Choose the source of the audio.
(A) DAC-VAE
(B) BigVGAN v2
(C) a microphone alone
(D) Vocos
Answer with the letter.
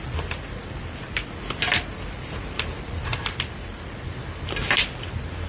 B